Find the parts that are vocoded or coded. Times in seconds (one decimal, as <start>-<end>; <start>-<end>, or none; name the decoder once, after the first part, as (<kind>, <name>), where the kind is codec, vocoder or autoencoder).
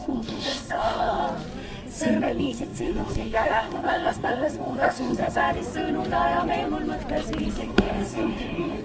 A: 0.0-1.2 (codec, SNAC); 2.2-5.4; 7.6-8.8